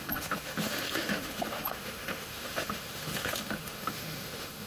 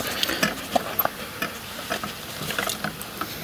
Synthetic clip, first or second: first